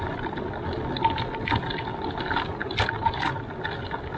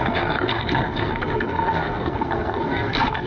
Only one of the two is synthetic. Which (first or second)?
second